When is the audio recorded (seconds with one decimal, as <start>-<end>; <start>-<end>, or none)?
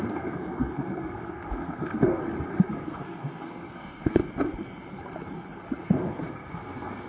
2.2-2.7; 4.2-5.8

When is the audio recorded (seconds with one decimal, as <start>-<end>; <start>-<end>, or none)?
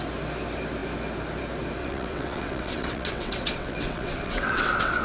0.0-1.8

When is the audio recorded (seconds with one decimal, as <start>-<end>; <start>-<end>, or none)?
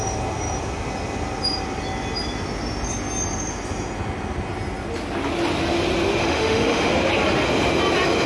0.0-6.2; 6.9-8.3